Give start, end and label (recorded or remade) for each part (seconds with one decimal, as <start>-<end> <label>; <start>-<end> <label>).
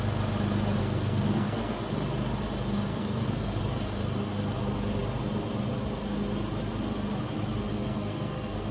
0.0-0.8 recorded; 0.8-1.8 remade; 1.8-2.9 recorded; 2.9-3.6 remade; 3.6-7.7 recorded; 7.7-8.7 remade